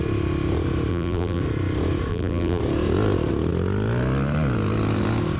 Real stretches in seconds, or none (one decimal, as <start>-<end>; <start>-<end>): 0.0-0.9; 1.4-2.1; 2.6-5.4